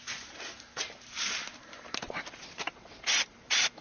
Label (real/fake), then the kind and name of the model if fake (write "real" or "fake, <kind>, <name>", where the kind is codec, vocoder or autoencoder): fake, vocoder, BigVGAN v2